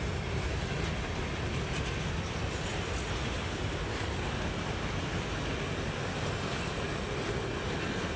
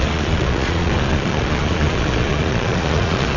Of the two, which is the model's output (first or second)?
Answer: second